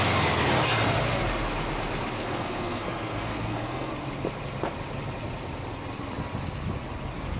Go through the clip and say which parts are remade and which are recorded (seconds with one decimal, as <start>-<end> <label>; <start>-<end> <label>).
0.0-2.3 recorded; 2.3-3.9 remade; 3.9-7.4 recorded